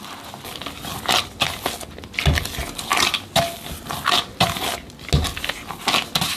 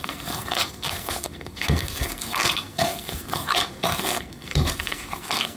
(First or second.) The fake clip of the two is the second